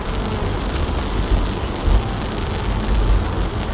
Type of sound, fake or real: real